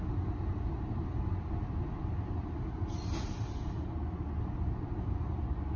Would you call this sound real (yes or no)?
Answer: yes